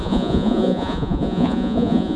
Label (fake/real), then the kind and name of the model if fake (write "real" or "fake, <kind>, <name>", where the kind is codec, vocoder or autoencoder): fake, vocoder, Vocos